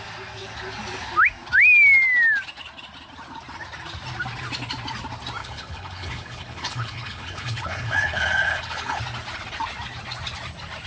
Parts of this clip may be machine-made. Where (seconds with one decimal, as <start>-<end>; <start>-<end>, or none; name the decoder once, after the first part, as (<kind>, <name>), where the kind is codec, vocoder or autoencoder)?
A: 5.4-9.0 (codec, HILCodec)